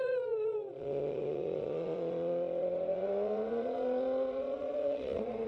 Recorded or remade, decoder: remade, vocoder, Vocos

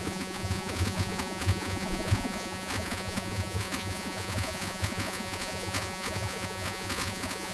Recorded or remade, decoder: remade, vocoder, Vocos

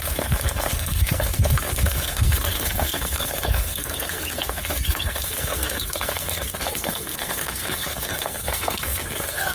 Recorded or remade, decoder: remade, codec, SNAC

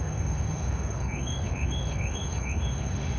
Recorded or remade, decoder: remade, autoencoder, DAC-VAE